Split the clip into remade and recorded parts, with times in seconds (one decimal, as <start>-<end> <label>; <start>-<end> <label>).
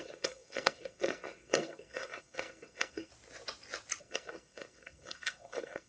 0.0-3.1 remade; 3.1-4.0 recorded; 4.0-5.9 remade